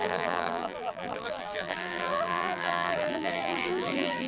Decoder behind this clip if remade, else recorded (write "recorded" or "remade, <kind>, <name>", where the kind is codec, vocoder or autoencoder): remade, vocoder, BigVGAN v2